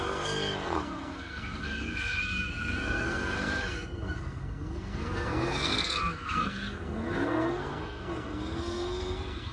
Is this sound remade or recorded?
remade